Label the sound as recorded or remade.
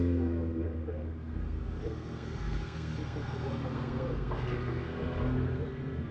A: remade